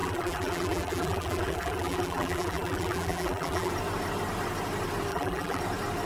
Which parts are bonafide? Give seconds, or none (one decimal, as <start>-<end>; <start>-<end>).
3.7-5.1; 5.6-6.1